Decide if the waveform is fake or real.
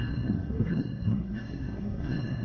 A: fake